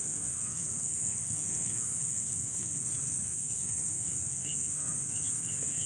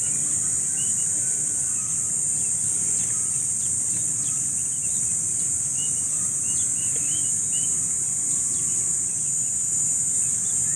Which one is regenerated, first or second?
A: first